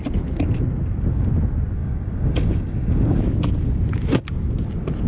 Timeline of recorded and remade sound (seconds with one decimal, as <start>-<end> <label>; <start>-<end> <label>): 0.0-1.8 recorded; 1.8-3.2 remade; 3.2-5.1 recorded